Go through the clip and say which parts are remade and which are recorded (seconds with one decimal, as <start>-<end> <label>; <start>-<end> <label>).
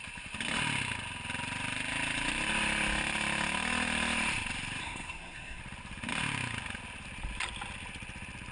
0.0-4.8 recorded; 4.8-5.6 remade; 5.6-8.5 recorded